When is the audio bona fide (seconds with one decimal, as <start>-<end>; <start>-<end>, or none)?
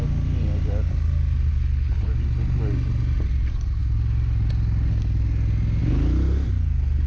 0.0-1.5; 2.1-7.1